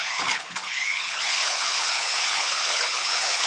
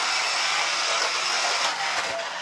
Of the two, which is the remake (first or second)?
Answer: first